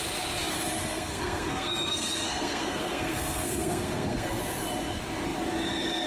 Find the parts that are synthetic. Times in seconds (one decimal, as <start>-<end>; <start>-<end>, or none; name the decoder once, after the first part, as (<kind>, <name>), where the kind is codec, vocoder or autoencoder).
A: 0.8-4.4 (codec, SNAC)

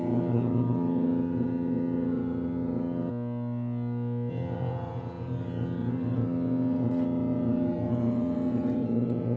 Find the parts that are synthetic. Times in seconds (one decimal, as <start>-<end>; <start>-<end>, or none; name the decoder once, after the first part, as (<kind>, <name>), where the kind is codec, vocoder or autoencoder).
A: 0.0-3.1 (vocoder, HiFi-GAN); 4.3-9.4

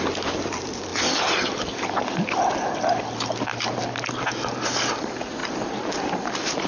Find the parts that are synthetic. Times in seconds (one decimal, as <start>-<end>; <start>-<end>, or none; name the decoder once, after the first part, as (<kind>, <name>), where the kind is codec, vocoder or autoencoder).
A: 0.9-4.1 (vocoder, BigVGAN v2)